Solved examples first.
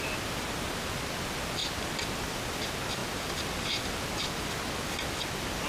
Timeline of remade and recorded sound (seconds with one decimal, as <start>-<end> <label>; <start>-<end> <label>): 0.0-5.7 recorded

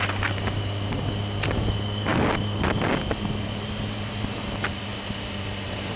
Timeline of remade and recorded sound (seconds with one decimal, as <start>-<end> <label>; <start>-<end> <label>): 0.0-6.0 recorded

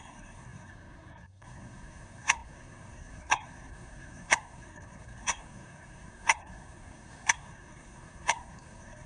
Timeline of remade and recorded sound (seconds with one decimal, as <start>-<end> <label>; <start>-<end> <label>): 0.0-9.1 remade